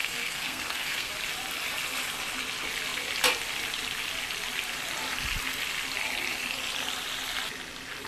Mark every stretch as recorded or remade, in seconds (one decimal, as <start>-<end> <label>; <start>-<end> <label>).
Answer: 0.0-1.1 remade; 1.1-8.1 recorded